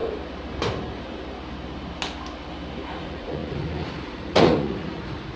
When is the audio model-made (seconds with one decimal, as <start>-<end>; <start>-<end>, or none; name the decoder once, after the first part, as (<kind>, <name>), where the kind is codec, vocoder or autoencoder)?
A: 2.9-5.4 (vocoder, Vocos)

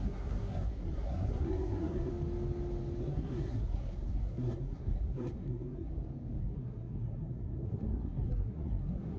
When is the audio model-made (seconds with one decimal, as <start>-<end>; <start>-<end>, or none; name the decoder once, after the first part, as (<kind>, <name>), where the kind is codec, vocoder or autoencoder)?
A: 0.0-2.1 (codec, SNAC); 3.0-5.9; 6.4-9.2

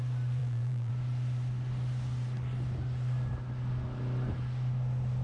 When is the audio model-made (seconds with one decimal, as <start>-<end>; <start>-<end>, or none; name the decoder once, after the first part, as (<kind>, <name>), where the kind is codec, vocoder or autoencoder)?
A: 0.4-0.9 (vocoder, BigVGAN v2)

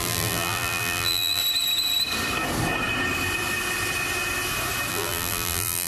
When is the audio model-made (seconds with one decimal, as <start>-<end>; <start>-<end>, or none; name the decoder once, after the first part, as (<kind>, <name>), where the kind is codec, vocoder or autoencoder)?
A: 0.0-1.4 (vocoder, BigVGAN v2); 4.9-5.9

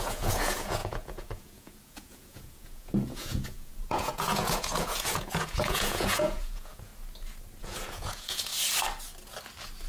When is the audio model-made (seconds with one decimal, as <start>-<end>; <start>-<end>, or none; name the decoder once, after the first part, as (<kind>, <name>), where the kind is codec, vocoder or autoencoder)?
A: 0.0-6.9 (vocoder, Vocos); 7.6-8.5

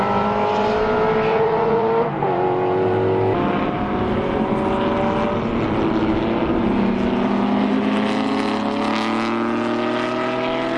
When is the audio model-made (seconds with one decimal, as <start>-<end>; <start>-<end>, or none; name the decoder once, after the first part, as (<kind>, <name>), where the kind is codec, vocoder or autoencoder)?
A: 1.3-1.9 (vocoder, Vocos)

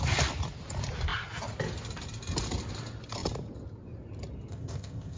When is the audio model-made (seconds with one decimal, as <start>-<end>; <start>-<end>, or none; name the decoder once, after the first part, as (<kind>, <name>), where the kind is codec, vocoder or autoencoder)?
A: 4.5-5.2 (codec, ZipCodec)

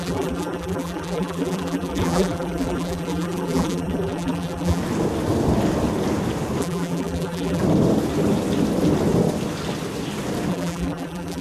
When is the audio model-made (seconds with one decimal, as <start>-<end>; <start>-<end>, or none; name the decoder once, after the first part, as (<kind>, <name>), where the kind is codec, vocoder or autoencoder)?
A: 0.0-4.8 (vocoder, BigVGAN v2); 6.6-7.6; 10.5-11.4